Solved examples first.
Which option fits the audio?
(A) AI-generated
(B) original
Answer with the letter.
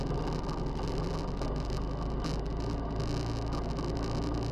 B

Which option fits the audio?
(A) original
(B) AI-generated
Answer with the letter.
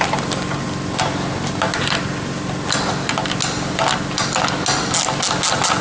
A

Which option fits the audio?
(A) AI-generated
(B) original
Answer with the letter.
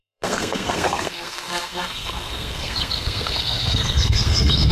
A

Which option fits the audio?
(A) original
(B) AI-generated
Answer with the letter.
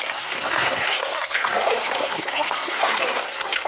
B